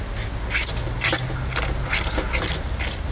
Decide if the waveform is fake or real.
real